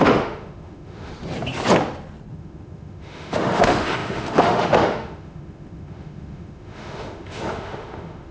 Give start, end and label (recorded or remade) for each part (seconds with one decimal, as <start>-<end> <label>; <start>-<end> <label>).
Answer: 0.0-1.1 remade; 1.1-2.3 recorded; 2.3-8.3 remade